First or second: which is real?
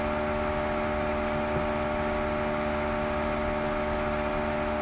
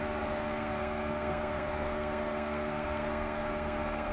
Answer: first